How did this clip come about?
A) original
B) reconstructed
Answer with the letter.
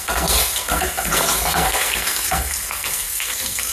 B